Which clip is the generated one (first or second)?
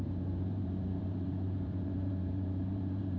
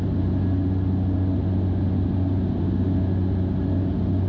first